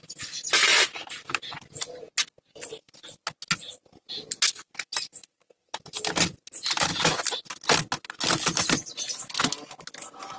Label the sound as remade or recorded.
recorded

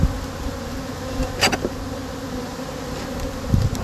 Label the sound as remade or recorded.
recorded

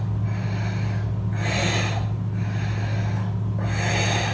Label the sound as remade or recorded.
recorded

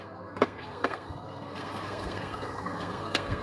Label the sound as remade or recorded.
remade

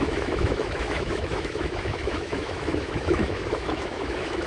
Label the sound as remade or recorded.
remade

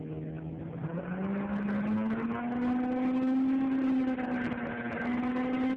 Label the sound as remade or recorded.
recorded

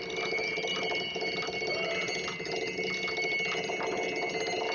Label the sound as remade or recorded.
recorded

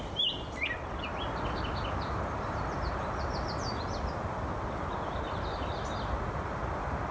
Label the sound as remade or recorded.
recorded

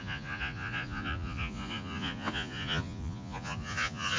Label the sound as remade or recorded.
remade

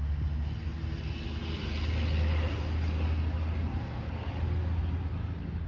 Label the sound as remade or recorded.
recorded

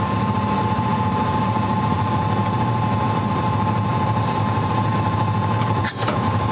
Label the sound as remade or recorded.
remade